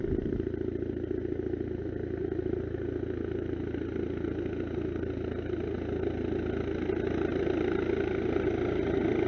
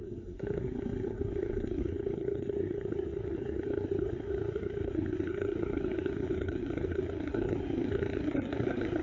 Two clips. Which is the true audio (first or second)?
first